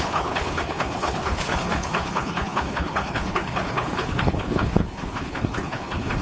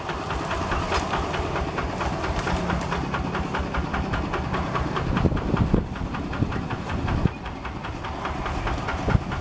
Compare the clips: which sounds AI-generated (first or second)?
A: first